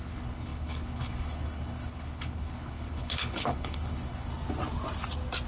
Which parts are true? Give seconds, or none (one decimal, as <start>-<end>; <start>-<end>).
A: 4.3-5.5